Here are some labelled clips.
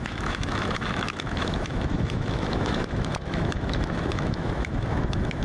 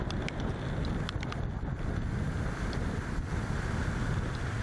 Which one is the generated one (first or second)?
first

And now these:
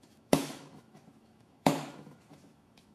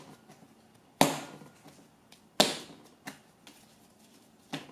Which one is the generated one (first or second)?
first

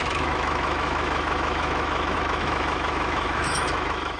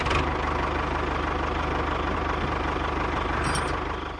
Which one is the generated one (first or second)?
first